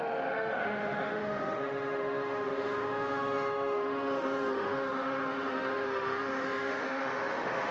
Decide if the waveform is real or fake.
fake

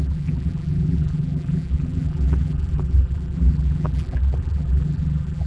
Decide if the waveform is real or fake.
fake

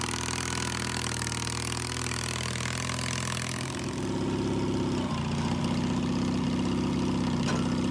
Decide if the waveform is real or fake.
real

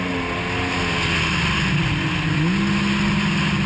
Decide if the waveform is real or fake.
real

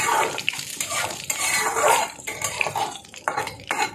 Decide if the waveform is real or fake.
fake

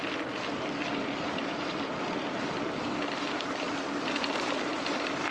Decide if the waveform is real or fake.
real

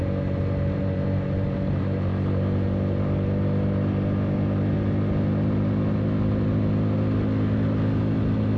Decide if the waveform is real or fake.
real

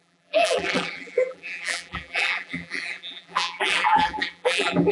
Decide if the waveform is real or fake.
fake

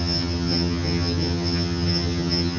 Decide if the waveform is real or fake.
fake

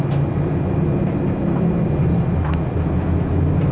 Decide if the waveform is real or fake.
real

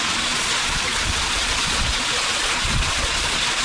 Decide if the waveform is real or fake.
fake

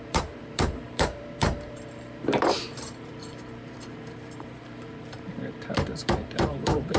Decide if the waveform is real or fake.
fake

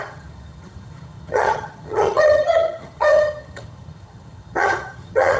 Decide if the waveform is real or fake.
fake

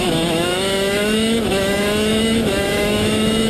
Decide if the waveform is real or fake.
fake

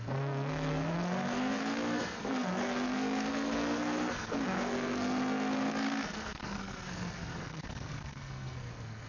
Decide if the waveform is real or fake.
fake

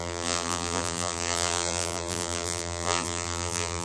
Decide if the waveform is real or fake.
fake